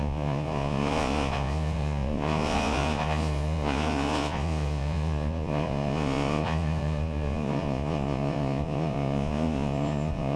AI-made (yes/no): yes